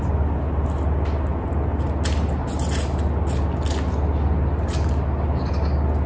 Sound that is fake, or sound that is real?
real